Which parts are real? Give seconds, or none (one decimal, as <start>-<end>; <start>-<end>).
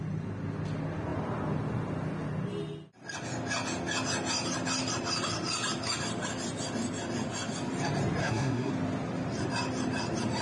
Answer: 0.0-8.2; 8.7-10.4